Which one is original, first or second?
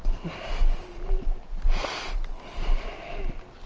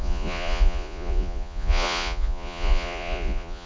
first